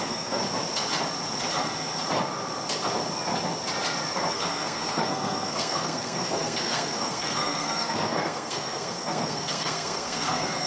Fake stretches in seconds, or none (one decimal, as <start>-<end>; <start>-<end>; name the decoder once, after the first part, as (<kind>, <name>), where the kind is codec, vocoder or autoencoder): 0.0-0.4 (codec, SNAC); 4.3-10.7